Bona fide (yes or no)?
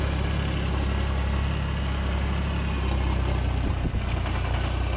yes